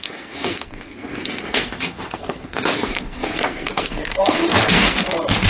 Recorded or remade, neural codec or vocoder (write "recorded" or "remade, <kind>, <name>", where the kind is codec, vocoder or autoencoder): remade, codec, SNAC